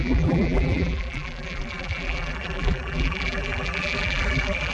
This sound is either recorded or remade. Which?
remade